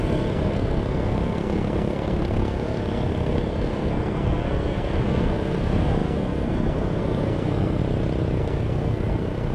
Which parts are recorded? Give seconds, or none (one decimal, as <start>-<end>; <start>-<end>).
7.8-8.4